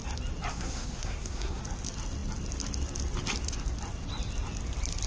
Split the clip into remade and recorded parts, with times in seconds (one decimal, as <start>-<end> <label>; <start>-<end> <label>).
0.0-0.5 recorded; 0.5-1.6 remade; 1.6-5.1 recorded